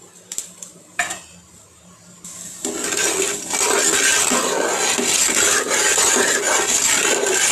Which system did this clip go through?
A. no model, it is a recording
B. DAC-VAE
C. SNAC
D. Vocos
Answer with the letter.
A